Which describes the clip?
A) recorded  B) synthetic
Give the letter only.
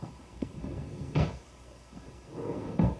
B